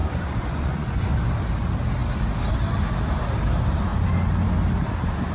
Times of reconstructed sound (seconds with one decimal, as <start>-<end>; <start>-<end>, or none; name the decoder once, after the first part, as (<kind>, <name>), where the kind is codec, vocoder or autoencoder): 0.0-1.1 (vocoder, Vocos)